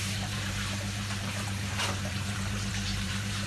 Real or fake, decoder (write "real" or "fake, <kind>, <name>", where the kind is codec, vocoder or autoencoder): fake, vocoder, BigVGAN v2